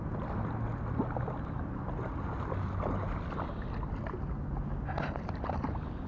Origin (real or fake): real